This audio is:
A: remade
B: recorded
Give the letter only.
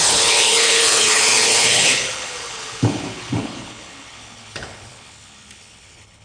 A